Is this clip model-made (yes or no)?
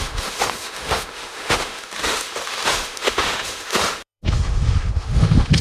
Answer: yes